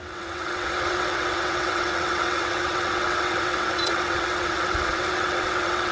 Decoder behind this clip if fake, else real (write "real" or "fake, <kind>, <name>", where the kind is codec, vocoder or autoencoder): fake, vocoder, WaveNeXt